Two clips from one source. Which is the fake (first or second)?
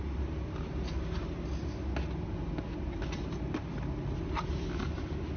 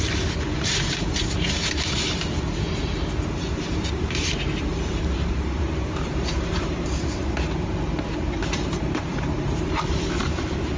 second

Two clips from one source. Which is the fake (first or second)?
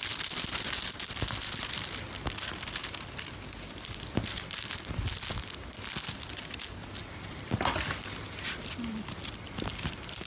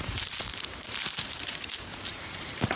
second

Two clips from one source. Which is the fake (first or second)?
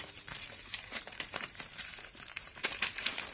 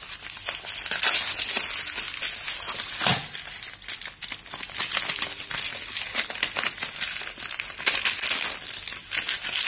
first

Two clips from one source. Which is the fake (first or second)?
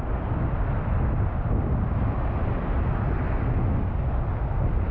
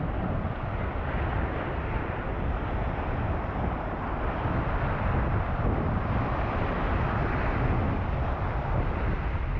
second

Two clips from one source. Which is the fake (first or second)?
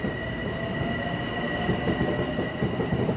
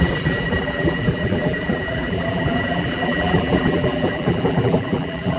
second